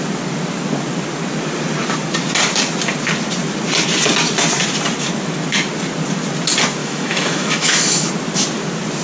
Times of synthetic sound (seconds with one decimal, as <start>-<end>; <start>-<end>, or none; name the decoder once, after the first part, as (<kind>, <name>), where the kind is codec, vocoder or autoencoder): 6.8-8.1 (autoencoder, DAC-VAE)